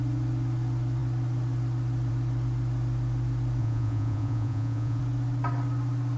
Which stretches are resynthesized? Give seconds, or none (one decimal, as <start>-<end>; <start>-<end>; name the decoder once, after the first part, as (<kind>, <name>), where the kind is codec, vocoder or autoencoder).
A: 3.6-5.0 (vocoder, Vocos)